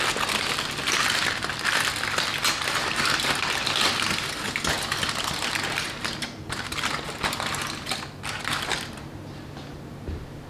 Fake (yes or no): no